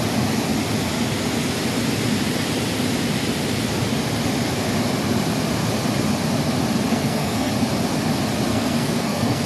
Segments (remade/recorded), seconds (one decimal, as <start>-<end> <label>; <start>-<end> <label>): 0.0-6.9 recorded; 6.9-7.5 remade; 7.5-8.5 recorded; 8.5-9.5 remade